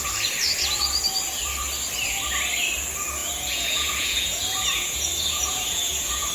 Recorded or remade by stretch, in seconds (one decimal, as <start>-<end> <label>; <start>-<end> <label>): 0.0-3.2 recorded; 3.2-6.3 remade